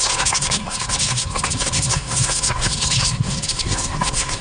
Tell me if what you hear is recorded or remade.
remade